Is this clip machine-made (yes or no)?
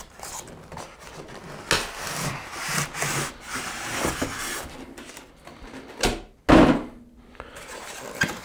no